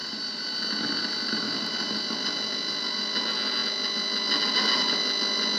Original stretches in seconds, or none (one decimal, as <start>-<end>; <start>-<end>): 0.0-5.6